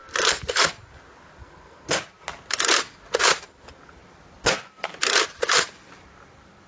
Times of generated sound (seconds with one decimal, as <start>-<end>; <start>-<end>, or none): 0.0-0.6; 1.4-2.0